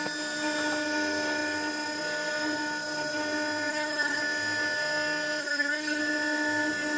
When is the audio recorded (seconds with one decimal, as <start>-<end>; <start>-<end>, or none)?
0.0-3.7; 4.2-5.4; 6.0-7.0